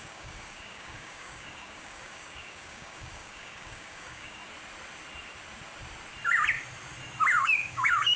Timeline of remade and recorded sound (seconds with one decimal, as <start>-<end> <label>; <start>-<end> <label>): 0.0-4.4 remade; 4.4-7.4 recorded; 7.4-8.2 remade